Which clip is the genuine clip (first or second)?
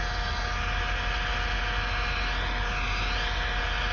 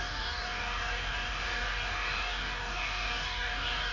first